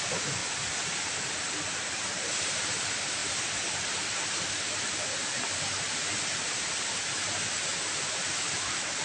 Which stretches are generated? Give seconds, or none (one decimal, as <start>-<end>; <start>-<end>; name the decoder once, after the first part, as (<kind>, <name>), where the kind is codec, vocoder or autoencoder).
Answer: 0.4-1.0 (vocoder, BigVGAN v2); 7.7-9.0